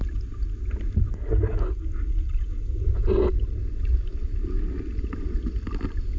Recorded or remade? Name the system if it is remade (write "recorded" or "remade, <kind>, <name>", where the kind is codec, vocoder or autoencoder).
recorded